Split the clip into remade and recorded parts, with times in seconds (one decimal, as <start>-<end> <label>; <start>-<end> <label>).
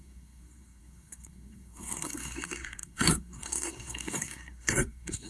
0.0-5.3 remade